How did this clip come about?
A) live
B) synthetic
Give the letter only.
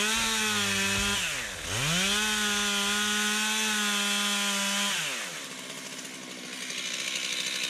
A